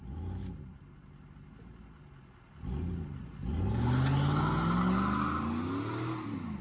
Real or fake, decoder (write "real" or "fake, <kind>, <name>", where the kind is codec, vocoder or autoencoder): real